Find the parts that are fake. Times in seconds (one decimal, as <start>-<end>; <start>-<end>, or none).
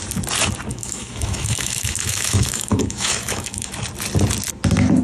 0.7-3.7